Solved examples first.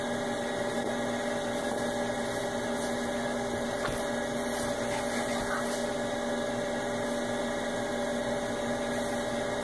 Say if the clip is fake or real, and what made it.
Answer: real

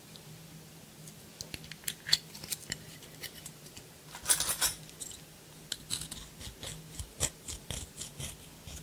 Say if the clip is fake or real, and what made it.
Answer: real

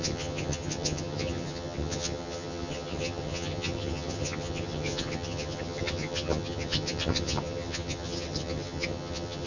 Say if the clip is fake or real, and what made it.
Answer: fake, vocoder, HiFi-GAN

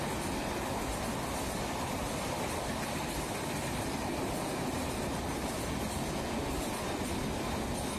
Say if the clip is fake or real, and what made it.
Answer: real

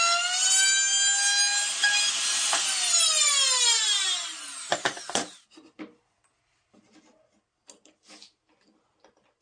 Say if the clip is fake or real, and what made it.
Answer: real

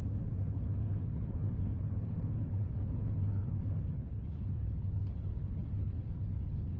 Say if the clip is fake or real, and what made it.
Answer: fake, codec, HILCodec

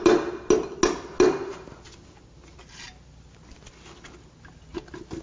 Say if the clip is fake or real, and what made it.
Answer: real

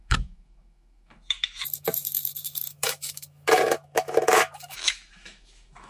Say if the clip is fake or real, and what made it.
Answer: fake, autoencoder, DAC-VAE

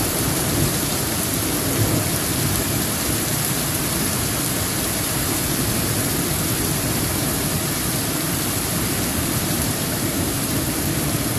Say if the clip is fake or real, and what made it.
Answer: fake, vocoder, BigVGAN v2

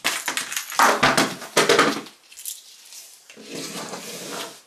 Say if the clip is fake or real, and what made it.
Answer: real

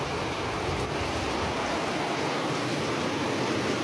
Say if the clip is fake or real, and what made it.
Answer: real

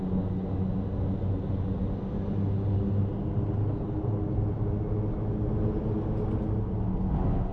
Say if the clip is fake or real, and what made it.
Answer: real